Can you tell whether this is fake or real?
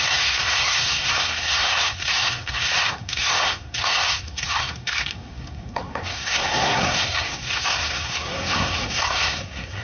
fake